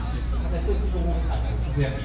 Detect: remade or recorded recorded